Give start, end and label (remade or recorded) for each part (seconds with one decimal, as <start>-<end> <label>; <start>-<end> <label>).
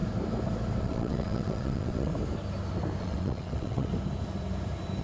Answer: 0.0-0.8 recorded; 0.8-2.1 remade; 2.1-3.0 recorded; 3.0-3.9 remade; 3.9-5.0 recorded